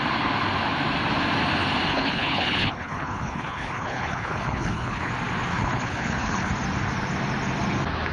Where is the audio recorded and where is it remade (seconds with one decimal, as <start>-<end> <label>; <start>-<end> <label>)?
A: 0.0-1.9 recorded; 1.9-5.1 remade; 5.1-5.5 recorded; 5.5-6.5 remade; 6.5-8.1 recorded